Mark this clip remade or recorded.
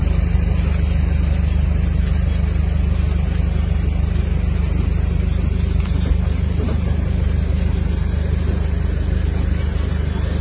recorded